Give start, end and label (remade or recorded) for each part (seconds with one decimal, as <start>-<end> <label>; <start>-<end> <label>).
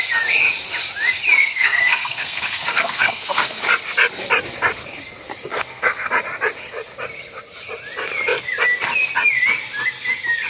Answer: 0.0-1.4 recorded; 1.4-3.6 remade; 3.6-5.5 recorded; 5.5-6.1 remade; 6.1-10.5 recorded